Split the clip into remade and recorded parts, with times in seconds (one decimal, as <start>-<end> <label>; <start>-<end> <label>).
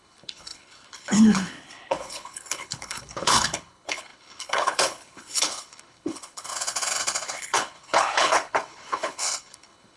0.0-10.0 remade